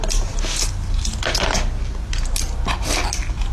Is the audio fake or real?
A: real